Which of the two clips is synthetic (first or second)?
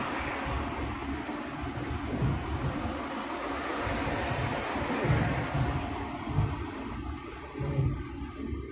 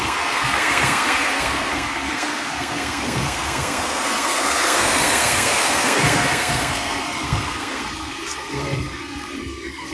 second